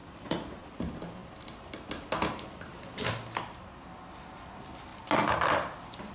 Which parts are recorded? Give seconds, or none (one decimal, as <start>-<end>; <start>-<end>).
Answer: 0.7-6.1